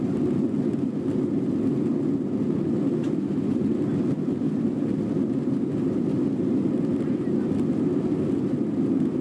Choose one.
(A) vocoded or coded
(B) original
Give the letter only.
B